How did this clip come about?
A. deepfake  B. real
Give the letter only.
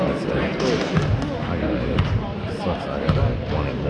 B